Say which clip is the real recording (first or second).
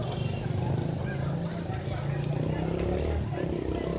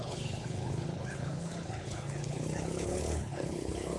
first